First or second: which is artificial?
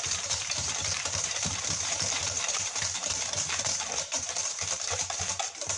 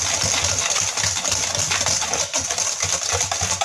first